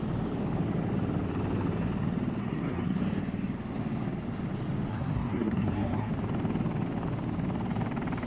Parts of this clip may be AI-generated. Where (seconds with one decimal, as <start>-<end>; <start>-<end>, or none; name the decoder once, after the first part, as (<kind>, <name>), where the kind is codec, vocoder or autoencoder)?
2.4-3.0 (codec, SNAC); 4.9-6.1